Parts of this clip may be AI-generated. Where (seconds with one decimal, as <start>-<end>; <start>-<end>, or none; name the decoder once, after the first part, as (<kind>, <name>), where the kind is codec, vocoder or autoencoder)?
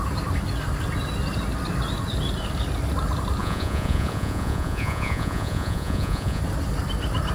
3.4-6.4 (vocoder, Vocos)